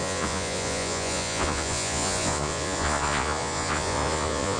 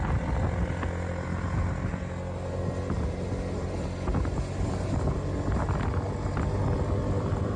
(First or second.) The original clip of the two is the second